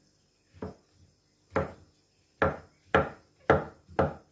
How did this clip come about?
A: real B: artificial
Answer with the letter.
A